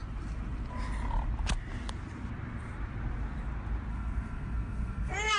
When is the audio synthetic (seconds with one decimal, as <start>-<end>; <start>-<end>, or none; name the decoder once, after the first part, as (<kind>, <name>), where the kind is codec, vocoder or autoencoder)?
3.9-5.4 (codec, SNAC)